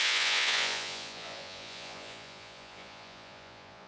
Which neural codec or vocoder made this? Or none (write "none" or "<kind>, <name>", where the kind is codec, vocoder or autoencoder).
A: vocoder, Vocos